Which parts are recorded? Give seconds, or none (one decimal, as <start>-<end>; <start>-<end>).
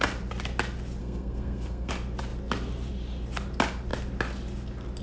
0.0-1.0; 1.9-5.0